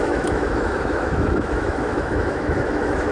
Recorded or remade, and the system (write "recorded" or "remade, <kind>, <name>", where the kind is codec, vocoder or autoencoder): remade, autoencoder, DAC-VAE